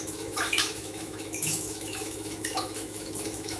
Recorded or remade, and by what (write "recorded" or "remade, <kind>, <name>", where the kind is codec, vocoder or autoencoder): remade, autoencoder, DAC-VAE